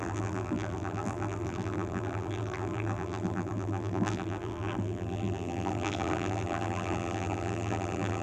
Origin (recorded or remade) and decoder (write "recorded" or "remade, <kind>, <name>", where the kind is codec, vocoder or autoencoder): remade, vocoder, BigVGAN v2